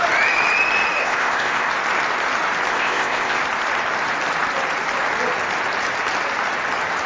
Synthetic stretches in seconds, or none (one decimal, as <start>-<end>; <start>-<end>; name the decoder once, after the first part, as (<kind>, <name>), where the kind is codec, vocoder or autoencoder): 1.0-1.7 (codec, ZipCodec); 2.7-3.4